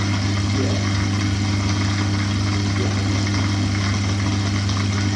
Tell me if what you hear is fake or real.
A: real